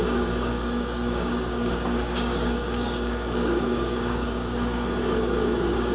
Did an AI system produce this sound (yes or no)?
yes